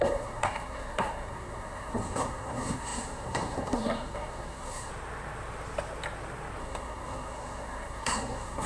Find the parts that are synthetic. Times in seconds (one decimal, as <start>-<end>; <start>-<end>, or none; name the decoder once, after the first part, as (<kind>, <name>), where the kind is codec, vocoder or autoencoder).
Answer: 0.0-4.9 (codec, SNAC); 6.6-8.7